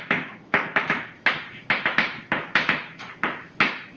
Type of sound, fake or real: fake